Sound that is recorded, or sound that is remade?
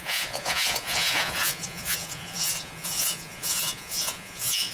remade